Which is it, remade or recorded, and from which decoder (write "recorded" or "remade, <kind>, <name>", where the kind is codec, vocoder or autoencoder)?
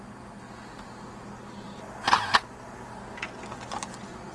recorded